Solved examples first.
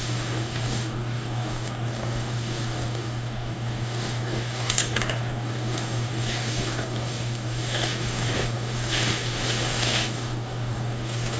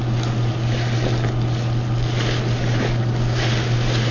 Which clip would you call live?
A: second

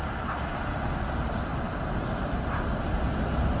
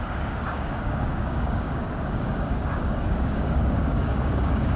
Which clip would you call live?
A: first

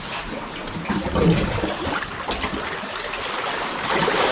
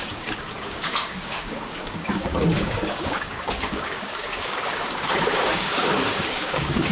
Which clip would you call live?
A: first